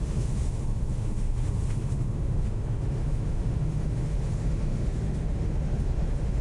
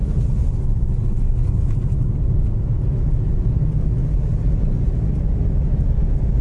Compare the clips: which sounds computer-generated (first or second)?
first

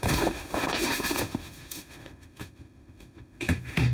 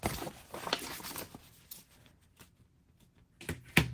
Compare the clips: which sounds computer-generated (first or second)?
first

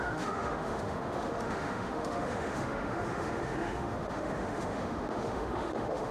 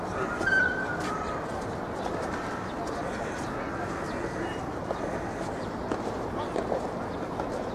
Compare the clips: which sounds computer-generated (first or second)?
first